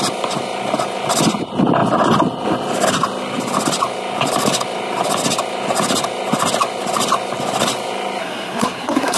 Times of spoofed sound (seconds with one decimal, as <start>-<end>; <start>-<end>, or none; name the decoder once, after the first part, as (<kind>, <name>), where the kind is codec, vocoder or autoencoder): 8.2-9.2 (codec, SNAC)